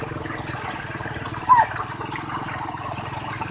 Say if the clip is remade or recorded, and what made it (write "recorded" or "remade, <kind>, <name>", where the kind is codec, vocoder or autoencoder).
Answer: recorded